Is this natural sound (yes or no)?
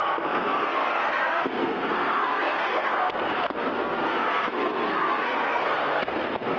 no